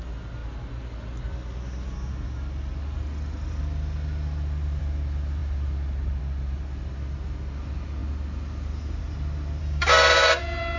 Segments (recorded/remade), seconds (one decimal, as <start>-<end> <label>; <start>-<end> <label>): 0.0-9.6 recorded; 9.6-10.4 remade; 10.4-10.8 recorded